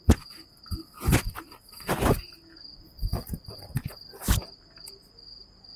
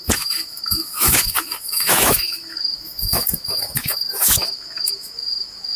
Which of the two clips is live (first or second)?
first